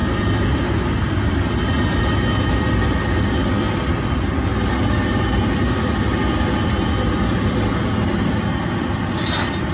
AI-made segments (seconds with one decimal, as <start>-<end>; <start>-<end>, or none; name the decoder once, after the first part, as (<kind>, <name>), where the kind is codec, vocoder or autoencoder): none